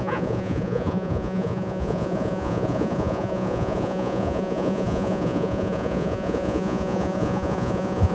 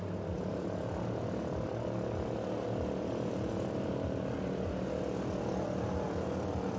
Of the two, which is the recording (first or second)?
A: second